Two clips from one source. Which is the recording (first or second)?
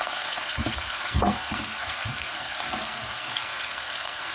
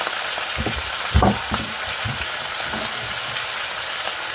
second